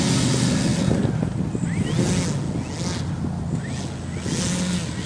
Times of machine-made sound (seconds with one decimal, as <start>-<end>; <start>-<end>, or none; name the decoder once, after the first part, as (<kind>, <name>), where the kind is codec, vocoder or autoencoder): none

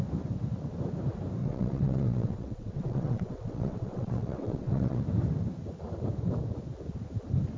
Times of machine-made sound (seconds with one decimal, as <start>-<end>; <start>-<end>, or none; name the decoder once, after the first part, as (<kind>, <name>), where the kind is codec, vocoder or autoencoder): 1.4-5.0 (vocoder, WaveNeXt)

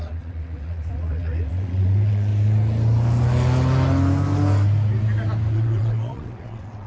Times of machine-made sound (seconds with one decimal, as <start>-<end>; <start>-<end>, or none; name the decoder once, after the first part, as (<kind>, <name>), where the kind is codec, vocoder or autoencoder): 0.0-2.3 (vocoder, WaveNeXt); 5.5-6.9

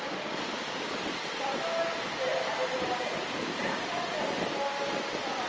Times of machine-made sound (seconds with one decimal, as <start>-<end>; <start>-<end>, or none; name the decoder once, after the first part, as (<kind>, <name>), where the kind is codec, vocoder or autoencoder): none

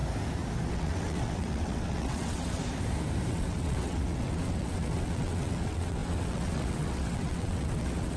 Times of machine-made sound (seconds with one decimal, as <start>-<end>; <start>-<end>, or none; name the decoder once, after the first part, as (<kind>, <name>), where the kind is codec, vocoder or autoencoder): 0.7-2.6 (vocoder, WaveNeXt); 3.3-8.2

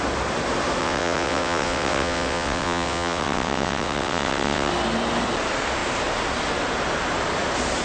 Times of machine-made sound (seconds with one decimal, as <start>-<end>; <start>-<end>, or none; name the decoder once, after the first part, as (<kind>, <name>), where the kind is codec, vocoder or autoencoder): 0.8-4.7 (vocoder, WaveNeXt)

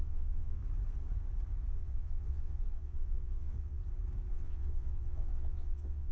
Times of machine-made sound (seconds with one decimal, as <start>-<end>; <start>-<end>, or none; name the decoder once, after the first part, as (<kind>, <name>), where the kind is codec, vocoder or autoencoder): 0.0-0.6 (vocoder, WaveNeXt); 1.7-3.8; 4.3-6.1